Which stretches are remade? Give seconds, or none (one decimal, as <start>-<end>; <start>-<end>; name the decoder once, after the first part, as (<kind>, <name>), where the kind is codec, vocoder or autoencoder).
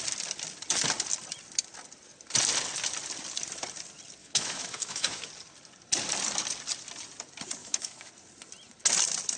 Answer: 4.2-5.3 (autoencoder, DAC-VAE); 7.6-8.1